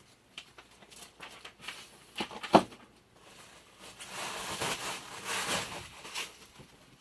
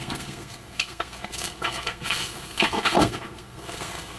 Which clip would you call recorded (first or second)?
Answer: first